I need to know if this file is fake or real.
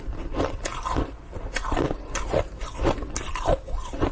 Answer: real